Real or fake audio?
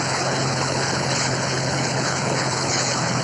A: fake